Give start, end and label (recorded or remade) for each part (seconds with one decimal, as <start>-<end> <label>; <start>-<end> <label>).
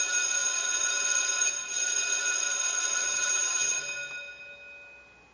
0.0-3.0 recorded; 3.0-3.8 remade; 3.8-5.3 recorded